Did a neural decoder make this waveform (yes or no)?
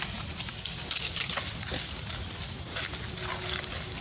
no